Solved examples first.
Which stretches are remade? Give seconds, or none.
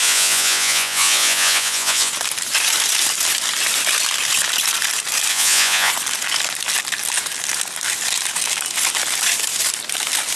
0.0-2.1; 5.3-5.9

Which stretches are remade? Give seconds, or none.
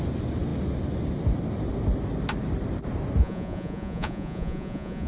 3.2-5.1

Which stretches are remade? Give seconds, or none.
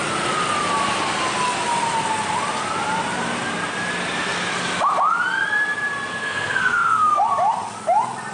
6.2-7.2